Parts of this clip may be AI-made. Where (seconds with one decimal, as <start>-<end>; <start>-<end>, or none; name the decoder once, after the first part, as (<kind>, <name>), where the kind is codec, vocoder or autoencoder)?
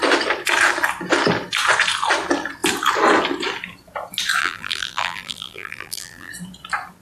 4.4-6.3 (vocoder, BigVGAN v2)